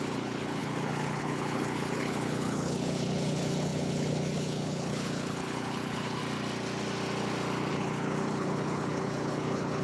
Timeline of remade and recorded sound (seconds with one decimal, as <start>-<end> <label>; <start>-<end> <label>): 0.0-6.2 remade; 6.2-7.7 recorded; 7.7-9.8 remade